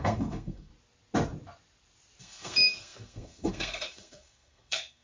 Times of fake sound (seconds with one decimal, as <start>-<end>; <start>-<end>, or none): 0.0-0.7; 2.2-5.0